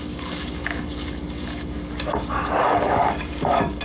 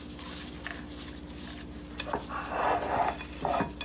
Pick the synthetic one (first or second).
first